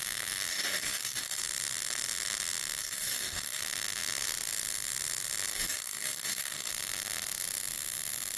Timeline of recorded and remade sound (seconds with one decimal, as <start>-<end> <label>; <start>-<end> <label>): 0.0-0.5 recorded; 0.5-1.4 remade; 1.4-2.8 recorded; 2.8-3.6 remade; 3.6-5.5 recorded; 5.5-6.7 remade; 6.7-8.4 recorded